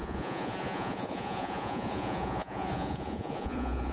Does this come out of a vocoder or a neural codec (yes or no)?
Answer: yes